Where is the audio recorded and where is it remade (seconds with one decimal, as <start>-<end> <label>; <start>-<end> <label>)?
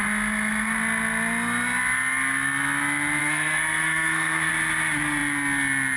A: 0.0-3.2 recorded; 3.2-4.5 remade; 4.5-6.0 recorded